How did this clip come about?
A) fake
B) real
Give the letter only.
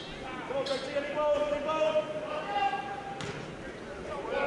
B